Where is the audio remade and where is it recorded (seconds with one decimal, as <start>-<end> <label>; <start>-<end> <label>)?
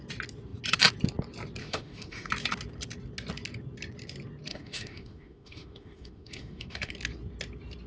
0.0-1.6 recorded; 1.6-2.3 remade; 2.3-4.5 recorded; 4.5-6.9 remade; 6.9-7.9 recorded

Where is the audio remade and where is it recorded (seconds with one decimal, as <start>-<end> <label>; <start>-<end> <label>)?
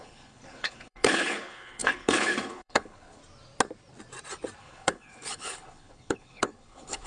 0.0-3.2 remade; 3.2-4.6 recorded; 4.6-7.1 remade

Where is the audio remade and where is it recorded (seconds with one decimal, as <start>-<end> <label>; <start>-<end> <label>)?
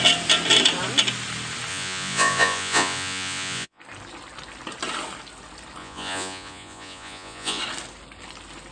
0.0-1.7 recorded; 1.7-3.8 remade; 3.8-5.8 recorded; 5.8-7.6 remade; 7.6-8.7 recorded